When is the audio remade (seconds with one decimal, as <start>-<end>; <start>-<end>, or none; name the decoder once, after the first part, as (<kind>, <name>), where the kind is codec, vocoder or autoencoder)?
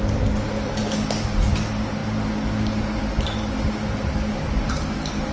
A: none